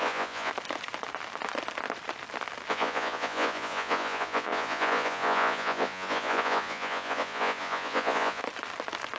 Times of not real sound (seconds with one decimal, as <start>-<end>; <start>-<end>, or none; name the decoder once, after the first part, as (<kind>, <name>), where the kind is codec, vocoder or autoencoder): 0.0-0.5 (vocoder, Vocos); 2.7-8.4